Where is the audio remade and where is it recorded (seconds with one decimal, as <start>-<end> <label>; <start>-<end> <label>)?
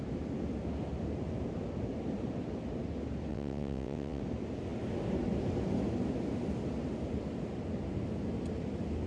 0.0-3.3 recorded; 3.3-4.2 remade; 4.2-9.1 recorded